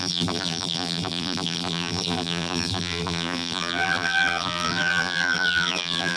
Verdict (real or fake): fake